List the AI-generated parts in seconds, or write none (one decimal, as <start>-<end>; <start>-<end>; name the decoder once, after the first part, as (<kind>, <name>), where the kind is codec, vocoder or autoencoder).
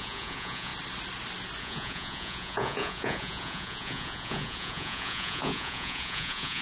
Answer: 0.0-0.7 (vocoder, Vocos); 1.6-6.6